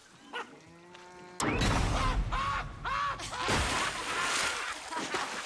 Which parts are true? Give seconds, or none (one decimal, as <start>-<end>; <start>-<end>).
0.0-2.2; 2.9-5.5